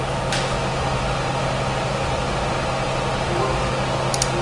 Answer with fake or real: real